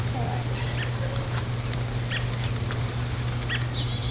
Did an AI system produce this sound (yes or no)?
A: no